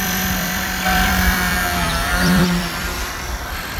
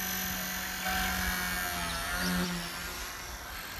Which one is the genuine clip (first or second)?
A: second